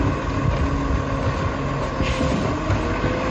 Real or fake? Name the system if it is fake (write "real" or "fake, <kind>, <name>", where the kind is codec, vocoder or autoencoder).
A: real